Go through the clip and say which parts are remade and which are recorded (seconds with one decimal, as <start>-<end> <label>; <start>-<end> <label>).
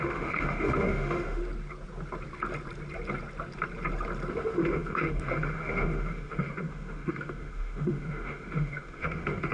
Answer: 0.0-1.4 remade; 1.4-4.3 recorded; 4.3-9.5 remade